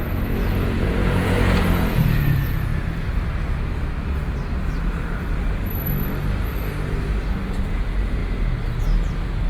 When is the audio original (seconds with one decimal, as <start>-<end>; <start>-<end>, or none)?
2.7-7.6; 8.2-9.5

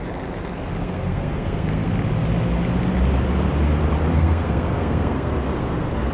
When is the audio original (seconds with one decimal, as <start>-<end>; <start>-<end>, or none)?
0.0-0.8; 1.9-4.1